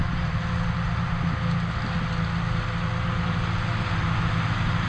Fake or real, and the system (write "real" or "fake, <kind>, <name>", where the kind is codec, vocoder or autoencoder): real